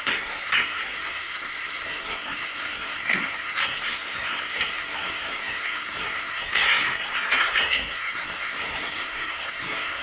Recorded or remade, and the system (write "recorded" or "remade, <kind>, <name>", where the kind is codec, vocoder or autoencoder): remade, codec, SNAC